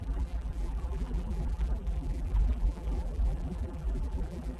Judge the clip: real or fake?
fake